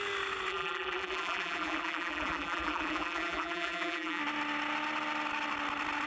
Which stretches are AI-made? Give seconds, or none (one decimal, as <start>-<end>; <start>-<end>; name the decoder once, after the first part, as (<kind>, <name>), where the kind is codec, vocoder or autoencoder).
0.5-4.2 (vocoder, BigVGAN v2)